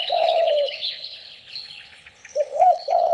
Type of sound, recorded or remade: remade